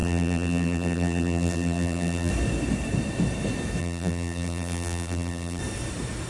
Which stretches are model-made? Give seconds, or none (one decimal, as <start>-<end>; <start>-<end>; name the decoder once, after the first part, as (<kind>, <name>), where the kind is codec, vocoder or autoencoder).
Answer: 0.0-2.3 (vocoder, BigVGAN v2); 3.8-5.6